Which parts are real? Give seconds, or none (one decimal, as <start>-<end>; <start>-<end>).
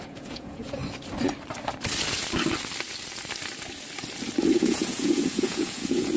0.8-4.5